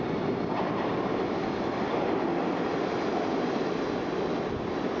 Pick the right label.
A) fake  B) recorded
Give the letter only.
B